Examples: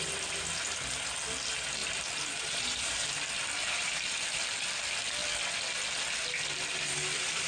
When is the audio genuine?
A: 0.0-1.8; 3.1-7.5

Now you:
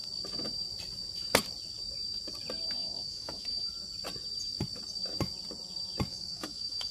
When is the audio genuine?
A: 0.0-2.8; 3.7-6.1

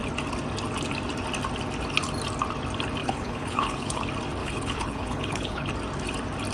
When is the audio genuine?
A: 0.0-3.0; 4.0-4.4; 5.7-6.5

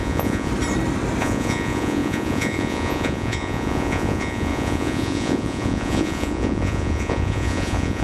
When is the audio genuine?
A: 0.5-1.2

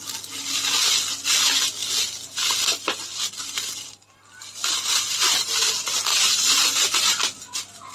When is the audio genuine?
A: 0.0-7.9

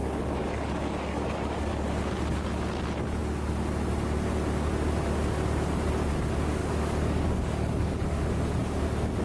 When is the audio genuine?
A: 1.7-6.6; 8.2-9.2